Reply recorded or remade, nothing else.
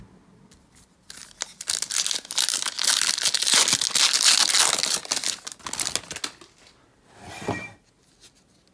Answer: recorded